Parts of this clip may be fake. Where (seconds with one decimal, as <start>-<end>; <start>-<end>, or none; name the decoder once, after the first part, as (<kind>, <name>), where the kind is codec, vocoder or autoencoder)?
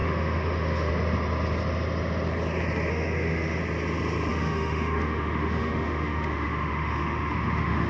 0.0-0.9 (autoencoder, DAC-VAE); 2.9-3.6; 4.3-7.9